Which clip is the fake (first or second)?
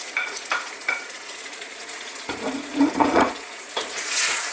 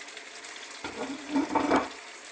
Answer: first